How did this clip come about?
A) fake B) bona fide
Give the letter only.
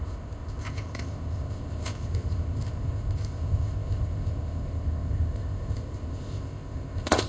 A